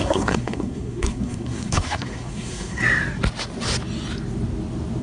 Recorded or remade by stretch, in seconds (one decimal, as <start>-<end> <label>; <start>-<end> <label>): 0.0-2.8 remade; 2.8-5.0 recorded